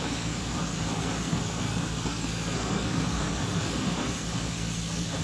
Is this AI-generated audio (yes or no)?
yes